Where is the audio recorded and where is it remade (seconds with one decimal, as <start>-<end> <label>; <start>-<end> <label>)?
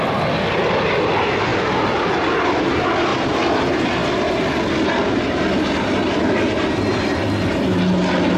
0.0-8.4 recorded